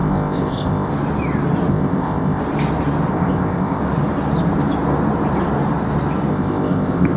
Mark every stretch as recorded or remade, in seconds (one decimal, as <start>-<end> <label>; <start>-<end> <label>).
0.0-0.9 remade; 0.9-1.7 recorded; 1.7-2.4 remade; 2.4-3.1 recorded; 3.1-3.8 remade; 3.8-6.3 recorded; 6.3-7.2 remade

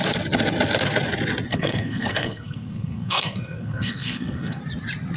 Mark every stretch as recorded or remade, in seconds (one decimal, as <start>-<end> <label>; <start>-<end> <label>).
0.0-1.5 recorded; 1.5-4.6 remade; 4.6-5.2 recorded

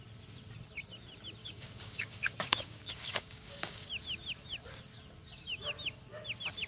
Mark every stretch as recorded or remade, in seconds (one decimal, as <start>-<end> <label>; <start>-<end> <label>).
0.0-1.4 recorded; 1.4-3.9 remade; 3.9-6.7 recorded

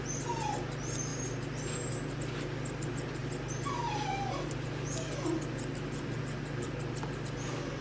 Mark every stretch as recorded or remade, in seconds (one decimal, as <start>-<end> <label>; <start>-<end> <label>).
0.0-7.8 recorded

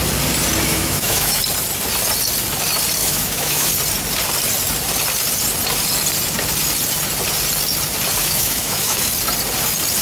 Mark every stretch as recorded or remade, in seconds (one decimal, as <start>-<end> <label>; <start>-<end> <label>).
0.0-0.7 recorded; 0.7-1.4 remade; 1.4-3.0 recorded; 3.0-3.7 remade; 3.7-8.2 recorded; 8.2-9.1 remade; 9.1-10.0 recorded

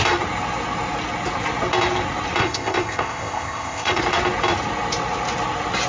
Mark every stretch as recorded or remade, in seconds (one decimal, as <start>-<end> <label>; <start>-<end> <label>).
0.0-2.4 recorded; 2.4-4.0 remade; 4.0-5.9 recorded